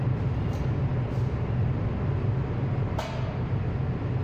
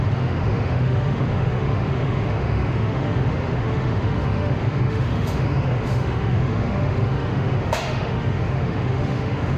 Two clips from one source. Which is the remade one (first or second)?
second